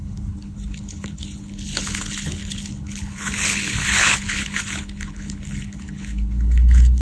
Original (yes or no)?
no